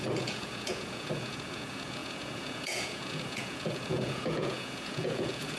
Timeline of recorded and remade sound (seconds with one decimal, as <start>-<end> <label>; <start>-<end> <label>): 0.0-5.6 remade